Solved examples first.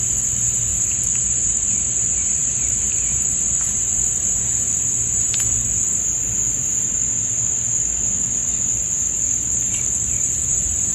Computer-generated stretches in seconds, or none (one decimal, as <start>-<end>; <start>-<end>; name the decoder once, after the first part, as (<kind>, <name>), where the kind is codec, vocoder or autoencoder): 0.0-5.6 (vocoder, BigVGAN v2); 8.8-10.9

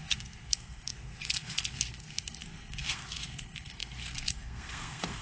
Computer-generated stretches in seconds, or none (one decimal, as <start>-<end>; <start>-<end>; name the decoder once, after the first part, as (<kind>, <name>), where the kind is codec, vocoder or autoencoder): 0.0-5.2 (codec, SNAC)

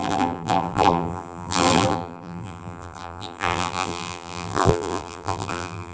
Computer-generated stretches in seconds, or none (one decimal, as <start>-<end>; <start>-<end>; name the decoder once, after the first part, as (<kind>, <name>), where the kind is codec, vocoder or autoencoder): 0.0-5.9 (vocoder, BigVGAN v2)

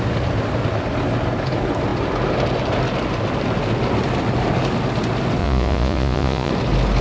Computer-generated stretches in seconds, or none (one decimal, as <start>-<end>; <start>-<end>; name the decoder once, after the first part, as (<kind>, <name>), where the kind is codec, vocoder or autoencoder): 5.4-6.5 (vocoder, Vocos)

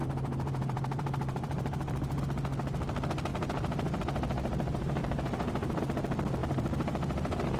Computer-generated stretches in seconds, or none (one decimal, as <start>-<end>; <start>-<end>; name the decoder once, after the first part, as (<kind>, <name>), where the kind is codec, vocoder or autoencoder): 0.0-2.2 (vocoder, BigVGAN v2); 3.3-5.8; 6.4-7.6